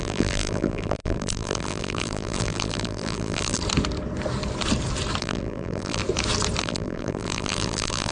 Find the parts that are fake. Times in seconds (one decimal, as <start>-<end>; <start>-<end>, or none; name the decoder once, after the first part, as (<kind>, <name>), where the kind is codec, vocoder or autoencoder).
0.0-3.6 (vocoder, BigVGAN v2); 5.2-6.0; 6.6-8.1